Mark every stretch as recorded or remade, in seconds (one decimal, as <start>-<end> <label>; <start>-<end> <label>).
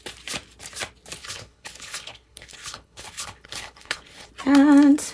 0.0-1.2 recorded; 1.2-4.3 remade; 4.3-5.1 recorded